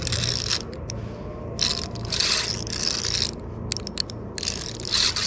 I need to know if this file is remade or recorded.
recorded